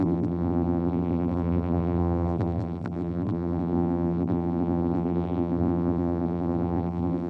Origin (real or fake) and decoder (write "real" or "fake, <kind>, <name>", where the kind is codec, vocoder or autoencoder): fake, vocoder, BigVGAN v2